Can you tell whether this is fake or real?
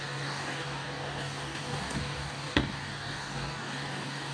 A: fake